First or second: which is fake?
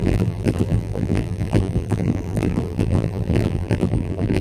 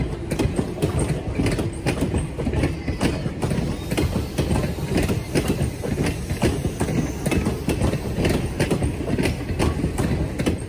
first